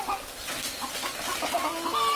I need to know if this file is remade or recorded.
recorded